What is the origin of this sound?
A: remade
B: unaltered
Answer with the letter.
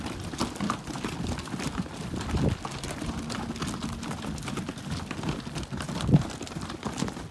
B